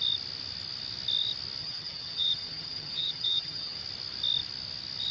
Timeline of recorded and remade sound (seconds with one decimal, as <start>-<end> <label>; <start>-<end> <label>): 0.0-1.6 recorded; 1.6-3.8 remade; 3.8-5.1 recorded

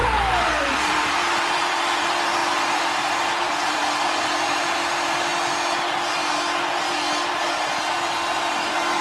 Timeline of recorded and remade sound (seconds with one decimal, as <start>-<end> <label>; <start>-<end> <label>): 0.0-5.3 remade; 5.3-7.3 recorded; 7.3-9.0 remade